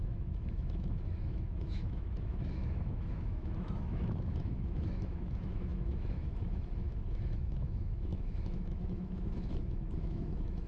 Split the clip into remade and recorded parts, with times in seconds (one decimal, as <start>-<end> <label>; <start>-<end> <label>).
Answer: 0.0-10.7 remade